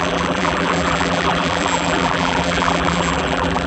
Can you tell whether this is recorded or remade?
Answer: remade